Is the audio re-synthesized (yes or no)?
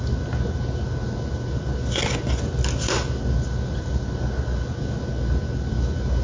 no